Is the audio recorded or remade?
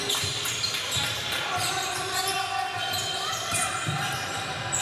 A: recorded